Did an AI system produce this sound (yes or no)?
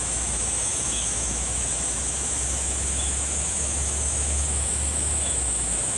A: yes